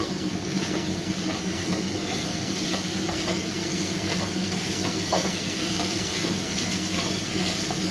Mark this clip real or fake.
fake